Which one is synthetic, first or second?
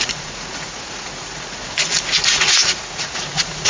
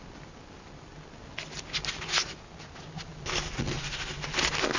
first